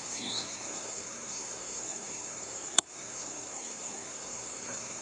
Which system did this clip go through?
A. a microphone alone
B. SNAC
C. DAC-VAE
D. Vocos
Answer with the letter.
B